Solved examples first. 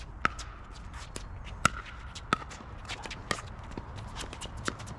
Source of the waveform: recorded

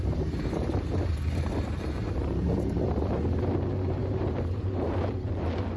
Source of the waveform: remade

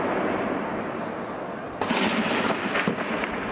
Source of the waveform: recorded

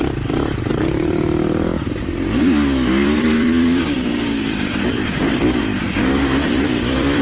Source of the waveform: remade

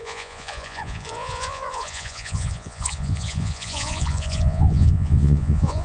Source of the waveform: remade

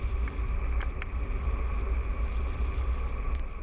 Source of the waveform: recorded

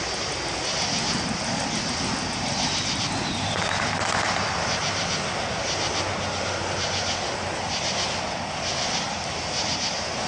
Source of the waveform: recorded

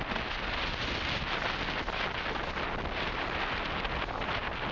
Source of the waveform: recorded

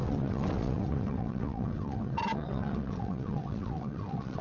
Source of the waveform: remade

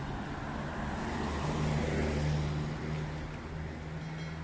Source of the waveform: recorded